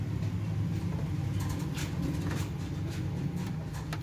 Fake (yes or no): no